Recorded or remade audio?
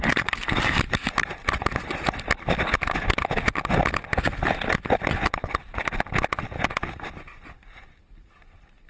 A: recorded